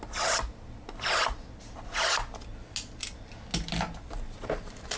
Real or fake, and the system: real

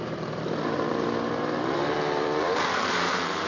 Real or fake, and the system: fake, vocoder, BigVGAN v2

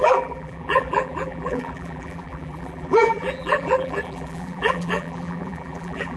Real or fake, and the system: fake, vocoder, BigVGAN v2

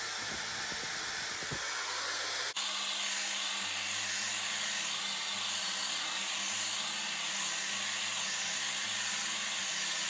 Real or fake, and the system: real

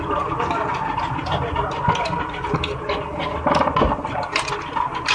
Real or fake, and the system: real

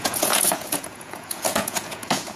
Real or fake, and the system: fake, vocoder, Vocos